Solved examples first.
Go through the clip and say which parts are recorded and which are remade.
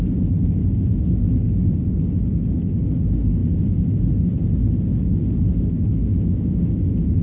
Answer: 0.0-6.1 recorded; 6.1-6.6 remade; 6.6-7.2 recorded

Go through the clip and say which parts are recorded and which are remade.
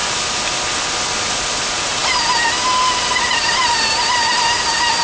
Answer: 0.0-5.0 recorded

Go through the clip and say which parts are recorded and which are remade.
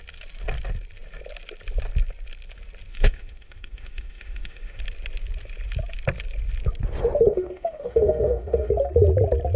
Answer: 0.0-2.9 recorded; 2.9-4.8 remade; 4.8-7.3 recorded; 7.3-8.7 remade; 8.7-9.6 recorded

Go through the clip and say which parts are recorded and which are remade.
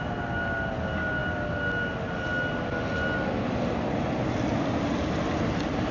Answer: 0.0-5.9 recorded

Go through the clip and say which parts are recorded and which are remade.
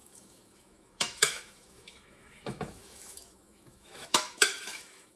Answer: 0.0-5.2 remade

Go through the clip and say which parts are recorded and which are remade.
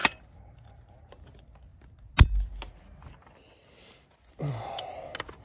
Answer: 0.0-5.4 recorded